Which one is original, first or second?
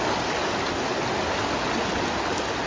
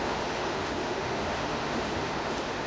first